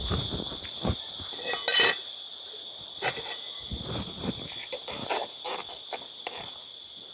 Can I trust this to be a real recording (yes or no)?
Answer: yes